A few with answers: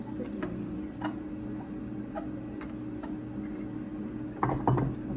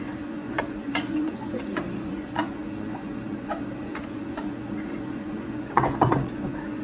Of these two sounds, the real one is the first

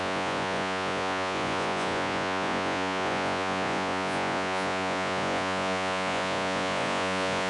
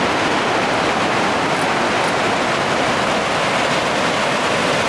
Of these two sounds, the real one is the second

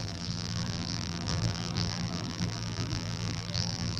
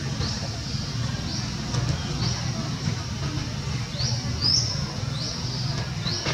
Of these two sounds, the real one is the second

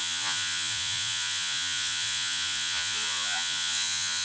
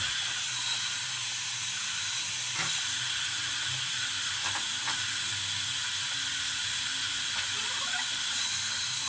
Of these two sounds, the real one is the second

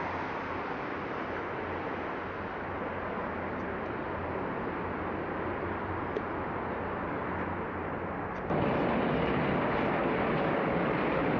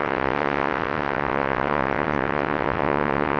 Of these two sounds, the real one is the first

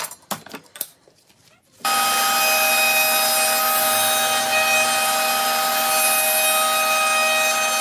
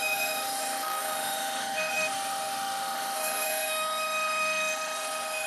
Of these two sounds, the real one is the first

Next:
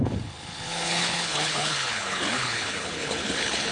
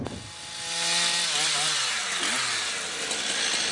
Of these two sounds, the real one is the second